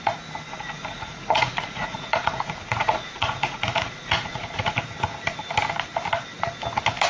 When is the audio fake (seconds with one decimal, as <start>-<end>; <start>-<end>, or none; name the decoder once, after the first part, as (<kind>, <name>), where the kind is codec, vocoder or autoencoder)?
0.5-4.7 (vocoder, Vocos)

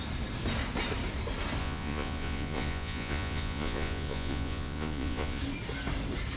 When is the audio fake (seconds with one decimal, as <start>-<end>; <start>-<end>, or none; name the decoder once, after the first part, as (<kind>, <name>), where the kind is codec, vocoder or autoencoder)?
1.6-5.4 (vocoder, Vocos)

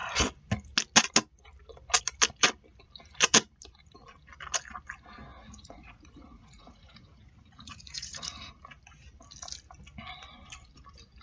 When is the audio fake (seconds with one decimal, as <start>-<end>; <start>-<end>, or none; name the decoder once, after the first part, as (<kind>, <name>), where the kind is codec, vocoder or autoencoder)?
5.3-8.5 (vocoder, Vocos)

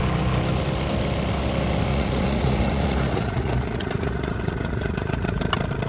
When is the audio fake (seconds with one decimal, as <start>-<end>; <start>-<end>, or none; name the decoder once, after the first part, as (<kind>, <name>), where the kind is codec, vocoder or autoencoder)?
1.9-5.4 (vocoder, Vocos)

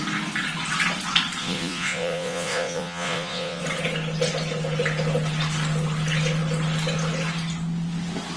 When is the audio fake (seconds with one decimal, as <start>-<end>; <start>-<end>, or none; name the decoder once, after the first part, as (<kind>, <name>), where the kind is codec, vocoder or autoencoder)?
1.4-3.6 (vocoder, Vocos)

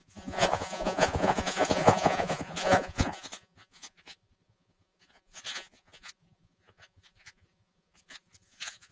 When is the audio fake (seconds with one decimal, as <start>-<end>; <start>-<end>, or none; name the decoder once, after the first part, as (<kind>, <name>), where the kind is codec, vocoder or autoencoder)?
0.0-8.9 (vocoder, Vocos)

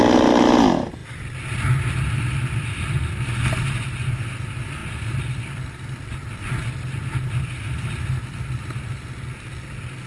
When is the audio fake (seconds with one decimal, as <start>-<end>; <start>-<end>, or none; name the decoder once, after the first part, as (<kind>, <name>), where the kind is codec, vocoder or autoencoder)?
none

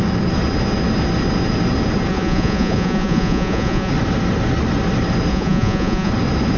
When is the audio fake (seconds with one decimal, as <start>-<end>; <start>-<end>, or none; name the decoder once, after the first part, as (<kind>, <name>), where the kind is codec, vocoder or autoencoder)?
2.1-3.9 (vocoder, Vocos); 5.3-6.1